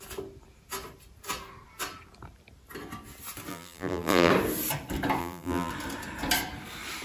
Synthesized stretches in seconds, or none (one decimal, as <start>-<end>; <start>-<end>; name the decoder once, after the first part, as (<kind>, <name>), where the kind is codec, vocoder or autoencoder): 3.5-4.3 (vocoder, BigVGAN v2); 5.2-5.7